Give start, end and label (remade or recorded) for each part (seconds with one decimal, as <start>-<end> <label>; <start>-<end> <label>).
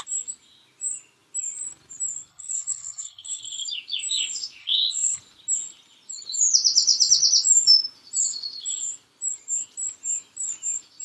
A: 0.0-2.3 recorded; 2.3-3.4 remade; 3.4-4.6 recorded; 4.6-5.2 remade; 5.2-11.0 recorded